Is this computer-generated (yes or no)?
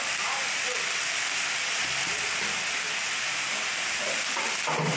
no